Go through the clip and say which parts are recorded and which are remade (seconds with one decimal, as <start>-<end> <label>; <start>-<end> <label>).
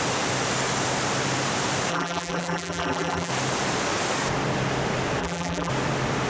0.0-1.9 recorded; 1.9-3.3 remade; 3.3-5.2 recorded; 5.2-5.7 remade; 5.7-6.3 recorded